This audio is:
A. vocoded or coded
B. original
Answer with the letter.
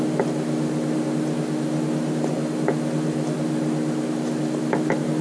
B